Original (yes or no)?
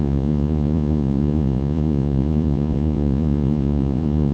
no